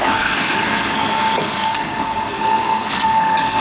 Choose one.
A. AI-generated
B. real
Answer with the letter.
A